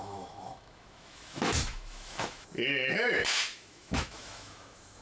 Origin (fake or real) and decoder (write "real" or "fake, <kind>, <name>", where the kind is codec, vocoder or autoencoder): fake, autoencoder, DAC-VAE